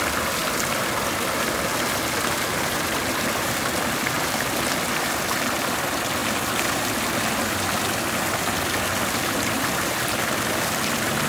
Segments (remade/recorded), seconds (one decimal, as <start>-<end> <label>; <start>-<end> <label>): 0.0-11.3 recorded